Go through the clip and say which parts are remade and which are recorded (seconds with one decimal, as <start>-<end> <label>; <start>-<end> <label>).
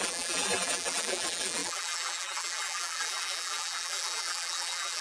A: 0.0-5.0 remade